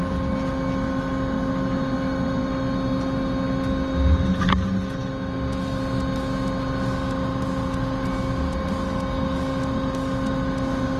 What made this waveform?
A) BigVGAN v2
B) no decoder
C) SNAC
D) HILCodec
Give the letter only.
B